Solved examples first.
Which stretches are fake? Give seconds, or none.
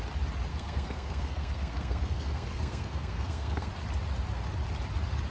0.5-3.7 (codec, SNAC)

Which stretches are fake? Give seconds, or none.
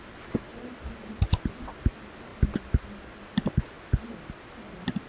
none